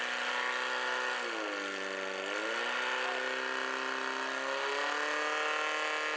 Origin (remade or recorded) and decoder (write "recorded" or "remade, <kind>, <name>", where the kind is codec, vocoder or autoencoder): recorded